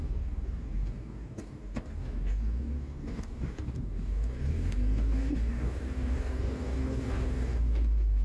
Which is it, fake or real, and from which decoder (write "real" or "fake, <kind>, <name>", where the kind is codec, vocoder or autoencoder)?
fake, codec, DAC